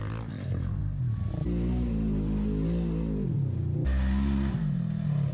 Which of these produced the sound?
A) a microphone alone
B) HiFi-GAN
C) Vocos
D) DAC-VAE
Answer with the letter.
A